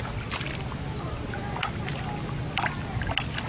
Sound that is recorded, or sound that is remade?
recorded